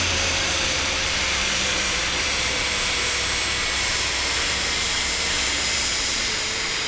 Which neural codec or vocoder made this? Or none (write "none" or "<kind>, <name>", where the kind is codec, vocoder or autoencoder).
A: vocoder, BigVGAN v2